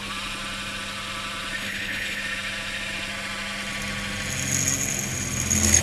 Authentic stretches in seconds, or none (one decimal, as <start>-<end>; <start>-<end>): 0.0-1.6; 2.2-5.8